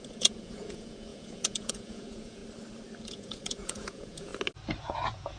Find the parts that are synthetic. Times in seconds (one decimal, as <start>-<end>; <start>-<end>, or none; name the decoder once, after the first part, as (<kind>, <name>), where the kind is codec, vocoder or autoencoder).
0.0-2.4 (vocoder, Vocos); 3.1-4.3; 4.8-5.4